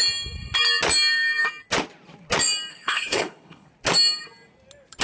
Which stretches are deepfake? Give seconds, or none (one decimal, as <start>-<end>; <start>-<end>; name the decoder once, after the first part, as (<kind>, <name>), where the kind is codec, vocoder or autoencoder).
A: 2.7-3.7 (codec, HILCodec)